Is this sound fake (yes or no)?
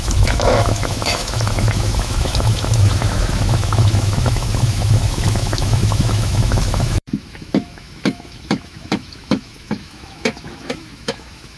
yes